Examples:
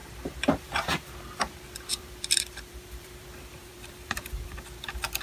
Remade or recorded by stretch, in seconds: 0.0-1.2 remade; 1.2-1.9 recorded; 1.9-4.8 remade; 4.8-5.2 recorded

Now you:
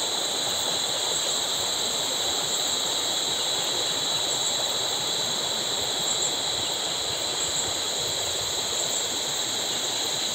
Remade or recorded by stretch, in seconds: 0.0-10.3 recorded

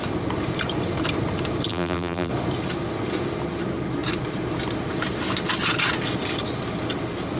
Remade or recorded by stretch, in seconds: 0.0-1.7 recorded; 1.7-2.3 remade; 2.3-7.4 recorded

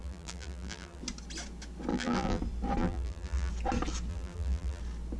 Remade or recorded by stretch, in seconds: 0.0-1.0 remade; 1.0-1.9 recorded; 1.9-2.4 remade; 2.4-2.8 recorded; 2.8-3.5 remade; 3.5-4.1 recorded; 4.1-4.8 remade; 4.8-5.2 recorded

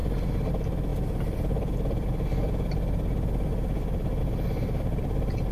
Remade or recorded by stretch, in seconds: 0.0-0.9 recorded; 0.9-4.2 remade; 4.2-5.5 recorded

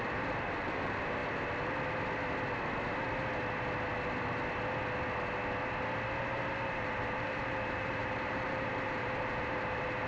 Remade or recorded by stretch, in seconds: 0.0-1.2 remade; 1.2-6.2 recorded; 6.2-10.1 remade

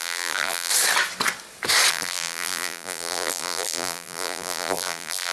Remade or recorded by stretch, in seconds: 0.0-0.7 remade; 0.7-1.9 recorded; 1.9-5.3 remade